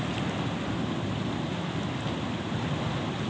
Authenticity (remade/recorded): recorded